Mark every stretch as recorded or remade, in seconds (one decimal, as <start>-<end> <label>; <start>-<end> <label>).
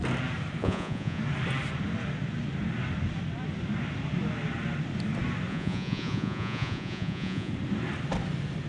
0.0-0.6 recorded; 0.6-1.2 remade; 1.2-5.5 recorded; 5.5-7.5 remade; 7.5-8.7 recorded